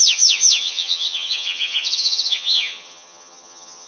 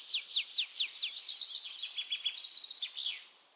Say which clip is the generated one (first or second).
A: first